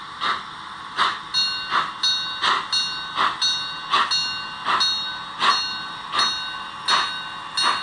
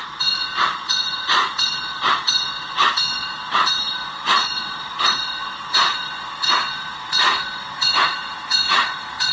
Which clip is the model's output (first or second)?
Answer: second